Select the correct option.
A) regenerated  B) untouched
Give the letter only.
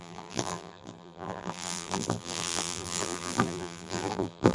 A